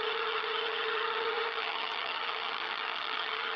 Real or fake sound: fake